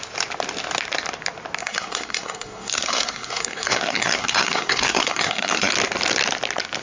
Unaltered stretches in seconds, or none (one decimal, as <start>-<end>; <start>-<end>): 0.0-1.6; 5.7-6.8